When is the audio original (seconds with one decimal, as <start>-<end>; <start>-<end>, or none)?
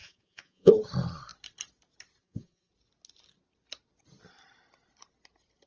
0.7-2.2; 2.7-5.7